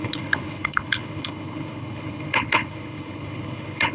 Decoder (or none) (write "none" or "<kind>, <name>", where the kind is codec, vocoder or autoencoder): codec, HILCodec